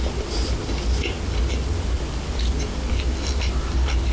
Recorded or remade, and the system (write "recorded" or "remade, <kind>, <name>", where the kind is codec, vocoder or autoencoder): recorded